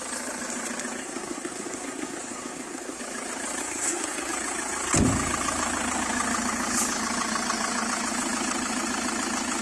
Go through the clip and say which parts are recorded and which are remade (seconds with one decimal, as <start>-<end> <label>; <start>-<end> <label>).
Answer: 0.0-1.0 recorded; 1.0-3.0 remade; 3.0-3.6 recorded; 3.6-4.3 remade; 4.3-9.6 recorded